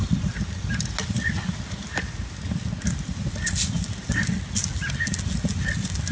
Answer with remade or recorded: recorded